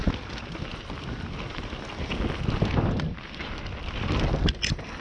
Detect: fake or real real